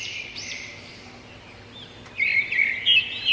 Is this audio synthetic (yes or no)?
no